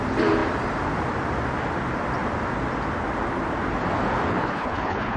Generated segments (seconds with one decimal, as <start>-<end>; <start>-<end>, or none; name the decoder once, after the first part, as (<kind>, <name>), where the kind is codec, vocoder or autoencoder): 4.3-5.2 (codec, HILCodec)

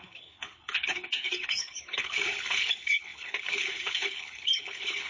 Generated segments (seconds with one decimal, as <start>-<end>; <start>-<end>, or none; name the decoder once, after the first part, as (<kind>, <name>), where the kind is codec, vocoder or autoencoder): 0.0-5.1 (codec, HILCodec)

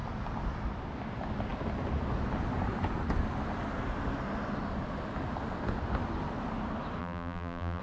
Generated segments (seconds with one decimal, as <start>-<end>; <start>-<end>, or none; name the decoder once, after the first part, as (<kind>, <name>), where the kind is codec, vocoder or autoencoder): 7.0-7.8 (vocoder, BigVGAN v2)